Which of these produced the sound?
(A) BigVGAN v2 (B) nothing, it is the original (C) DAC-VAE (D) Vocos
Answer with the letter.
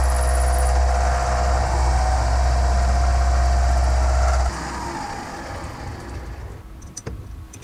B